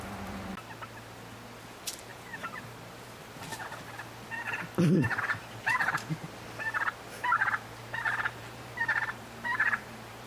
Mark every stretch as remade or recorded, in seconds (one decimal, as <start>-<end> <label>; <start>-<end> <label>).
0.0-2.1 recorded; 2.1-3.3 remade; 3.3-7.8 recorded; 7.8-10.3 remade